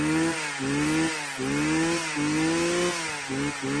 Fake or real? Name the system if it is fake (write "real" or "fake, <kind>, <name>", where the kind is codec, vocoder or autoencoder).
real